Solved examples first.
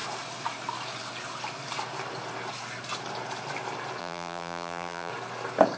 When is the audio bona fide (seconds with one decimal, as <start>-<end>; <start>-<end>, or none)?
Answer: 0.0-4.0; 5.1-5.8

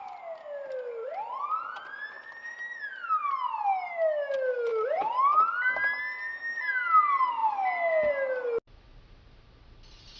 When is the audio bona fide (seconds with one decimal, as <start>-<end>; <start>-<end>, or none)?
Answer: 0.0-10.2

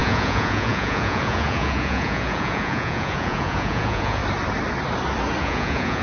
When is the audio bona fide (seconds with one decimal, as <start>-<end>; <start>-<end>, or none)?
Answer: 4.2-5.4